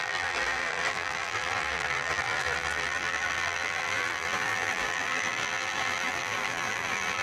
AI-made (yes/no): yes